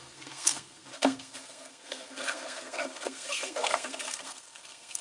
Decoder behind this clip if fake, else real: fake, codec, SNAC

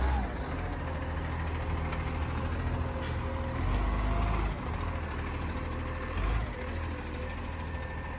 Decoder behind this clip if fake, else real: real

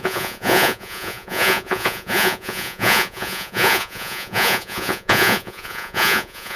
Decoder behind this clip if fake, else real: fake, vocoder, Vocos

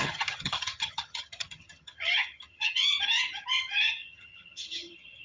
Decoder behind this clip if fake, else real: fake, vocoder, HiFi-GAN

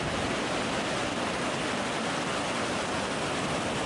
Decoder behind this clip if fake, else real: real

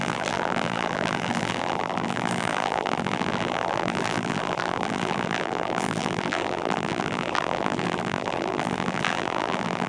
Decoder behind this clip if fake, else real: fake, vocoder, BigVGAN v2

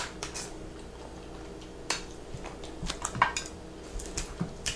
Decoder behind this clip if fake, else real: real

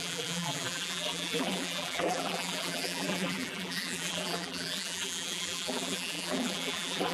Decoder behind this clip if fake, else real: fake, vocoder, BigVGAN v2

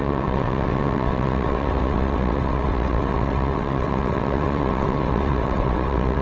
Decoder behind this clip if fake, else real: fake, vocoder, WaveNeXt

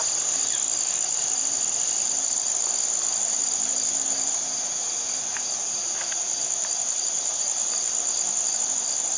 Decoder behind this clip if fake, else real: real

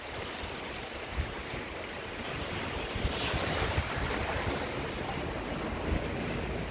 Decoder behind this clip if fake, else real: real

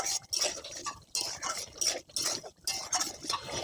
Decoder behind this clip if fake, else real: real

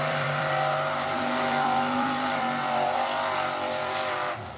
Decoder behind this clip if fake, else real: fake, vocoder, BigVGAN v2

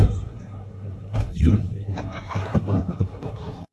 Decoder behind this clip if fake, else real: fake, codec, SNAC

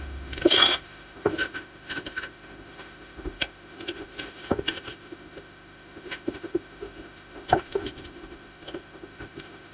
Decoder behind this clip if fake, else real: fake, autoencoder, DAC-VAE